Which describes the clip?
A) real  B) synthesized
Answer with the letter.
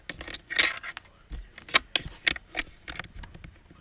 A